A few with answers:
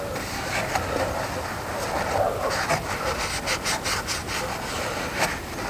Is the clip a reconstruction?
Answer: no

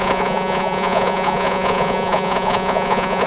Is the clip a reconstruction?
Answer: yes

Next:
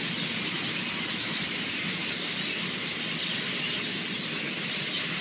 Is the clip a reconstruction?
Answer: no